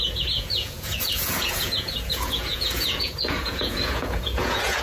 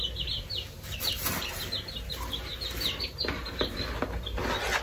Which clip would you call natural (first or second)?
second